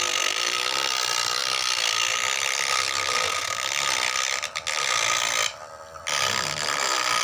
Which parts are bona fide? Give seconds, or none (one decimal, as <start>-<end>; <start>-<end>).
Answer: 0.0-7.2